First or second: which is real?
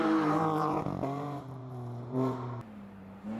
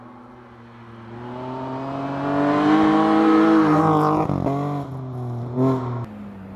second